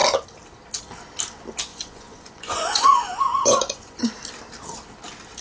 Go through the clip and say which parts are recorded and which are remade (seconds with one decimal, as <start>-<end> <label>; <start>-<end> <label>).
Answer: 0.0-1.7 recorded; 1.7-4.1 remade; 4.1-5.4 recorded